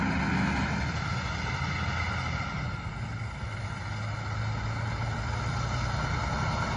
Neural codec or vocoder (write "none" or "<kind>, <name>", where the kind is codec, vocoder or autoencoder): none